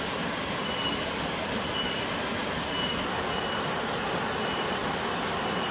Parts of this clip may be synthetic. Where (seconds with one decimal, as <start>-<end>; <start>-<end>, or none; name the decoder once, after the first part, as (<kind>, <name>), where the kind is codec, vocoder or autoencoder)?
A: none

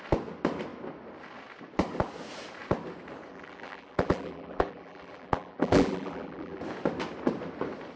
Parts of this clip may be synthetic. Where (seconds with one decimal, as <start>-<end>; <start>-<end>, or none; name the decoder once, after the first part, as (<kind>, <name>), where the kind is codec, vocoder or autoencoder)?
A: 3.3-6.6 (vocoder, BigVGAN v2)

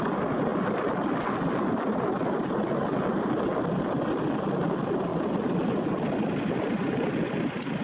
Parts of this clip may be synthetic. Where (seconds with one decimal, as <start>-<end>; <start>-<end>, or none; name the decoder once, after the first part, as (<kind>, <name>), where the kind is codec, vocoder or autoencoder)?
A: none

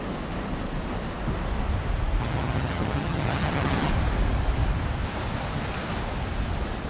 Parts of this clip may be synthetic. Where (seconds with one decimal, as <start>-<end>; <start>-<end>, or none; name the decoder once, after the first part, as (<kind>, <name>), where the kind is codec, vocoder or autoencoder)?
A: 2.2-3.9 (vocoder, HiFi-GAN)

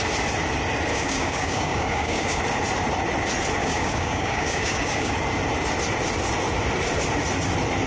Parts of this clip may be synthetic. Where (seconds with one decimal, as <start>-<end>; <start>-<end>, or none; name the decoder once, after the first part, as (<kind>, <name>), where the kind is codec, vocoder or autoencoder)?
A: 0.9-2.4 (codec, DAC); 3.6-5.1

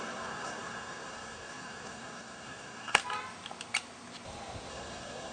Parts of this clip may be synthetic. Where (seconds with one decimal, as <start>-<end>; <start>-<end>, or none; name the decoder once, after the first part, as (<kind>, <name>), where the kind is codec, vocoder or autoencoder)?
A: 0.0-3.0 (codec, SNAC); 4.7-5.3

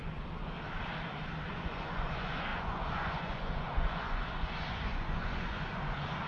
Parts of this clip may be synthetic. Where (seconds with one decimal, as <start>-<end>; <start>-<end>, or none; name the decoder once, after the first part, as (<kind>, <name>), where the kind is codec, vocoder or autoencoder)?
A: 1.5-6.3 (vocoder, Vocos)